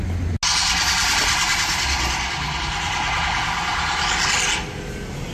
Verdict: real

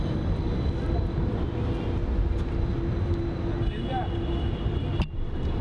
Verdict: real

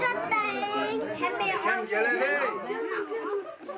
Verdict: real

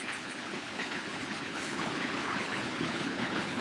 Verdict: fake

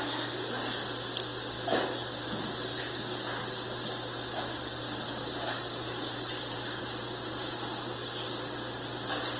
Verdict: real